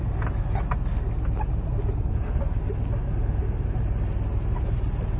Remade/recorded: recorded